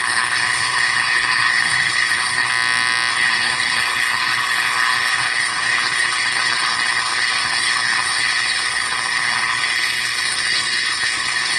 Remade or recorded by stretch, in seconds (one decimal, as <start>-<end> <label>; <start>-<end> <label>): 0.0-2.5 remade; 2.5-3.1 recorded; 3.1-11.6 remade